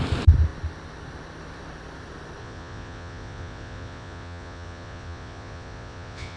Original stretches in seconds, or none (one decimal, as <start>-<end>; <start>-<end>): 0.0-2.4